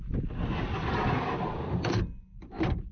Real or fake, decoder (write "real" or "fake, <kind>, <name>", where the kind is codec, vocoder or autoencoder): real